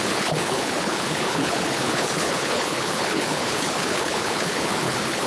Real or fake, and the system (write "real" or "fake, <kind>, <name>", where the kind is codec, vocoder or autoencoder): fake, codec, HILCodec